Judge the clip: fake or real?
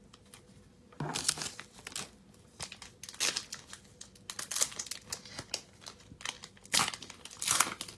real